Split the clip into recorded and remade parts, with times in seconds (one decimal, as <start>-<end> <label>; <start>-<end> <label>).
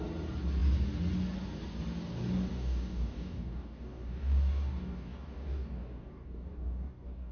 0.0-2.5 recorded; 2.5-7.3 remade